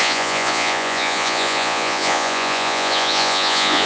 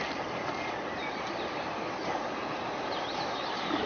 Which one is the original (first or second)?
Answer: second